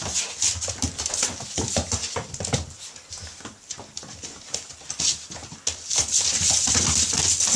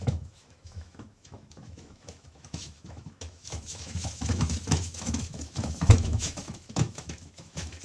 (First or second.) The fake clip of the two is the second